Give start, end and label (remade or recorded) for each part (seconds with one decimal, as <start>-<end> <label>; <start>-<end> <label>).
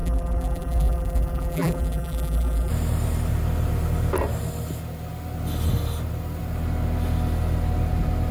0.0-2.7 remade; 2.7-8.3 recorded